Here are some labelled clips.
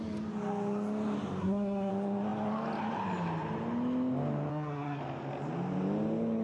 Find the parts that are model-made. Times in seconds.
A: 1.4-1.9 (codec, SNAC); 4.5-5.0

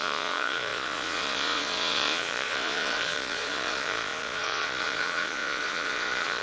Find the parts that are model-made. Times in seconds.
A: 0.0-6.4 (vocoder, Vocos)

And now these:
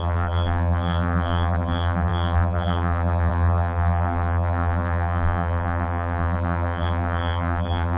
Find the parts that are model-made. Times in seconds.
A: 0.0-8.0 (vocoder, BigVGAN v2)